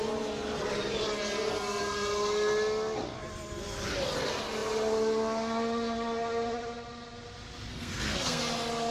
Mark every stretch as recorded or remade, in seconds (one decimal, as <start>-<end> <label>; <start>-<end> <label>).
0.0-7.7 recorded; 7.7-8.4 remade; 8.4-8.9 recorded